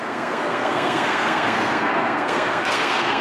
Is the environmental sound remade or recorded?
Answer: remade